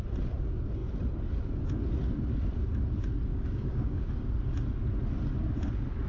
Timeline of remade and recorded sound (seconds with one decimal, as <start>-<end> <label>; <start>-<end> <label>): 0.0-3.3 recorded; 3.3-4.1 remade; 4.1-6.1 recorded